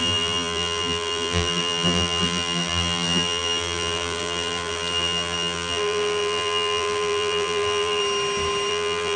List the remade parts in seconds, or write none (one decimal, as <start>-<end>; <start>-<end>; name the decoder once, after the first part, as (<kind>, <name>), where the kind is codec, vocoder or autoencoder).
0.0-8.0 (vocoder, BigVGAN v2); 8.7-9.2